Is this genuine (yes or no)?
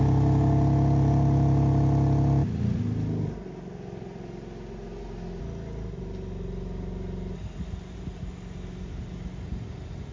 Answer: yes